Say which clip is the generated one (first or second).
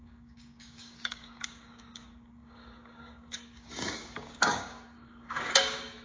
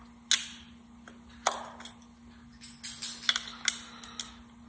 first